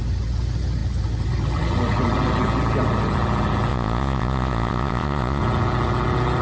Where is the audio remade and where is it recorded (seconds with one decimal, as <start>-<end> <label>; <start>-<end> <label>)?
0.0-3.7 recorded; 3.7-5.4 remade; 5.4-6.4 recorded